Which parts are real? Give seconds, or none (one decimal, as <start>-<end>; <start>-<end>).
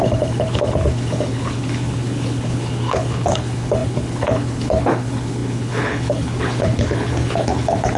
none